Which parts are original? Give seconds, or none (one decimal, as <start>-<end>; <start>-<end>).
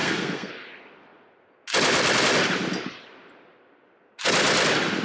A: 0.5-5.0